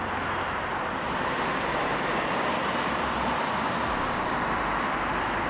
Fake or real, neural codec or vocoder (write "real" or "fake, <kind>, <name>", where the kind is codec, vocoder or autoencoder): fake, vocoder, BigVGAN v2